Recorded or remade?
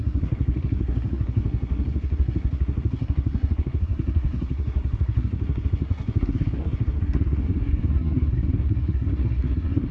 remade